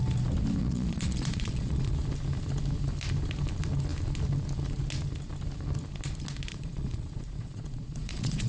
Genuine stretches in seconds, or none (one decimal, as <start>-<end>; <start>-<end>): 0.0-0.6; 1.9-6.5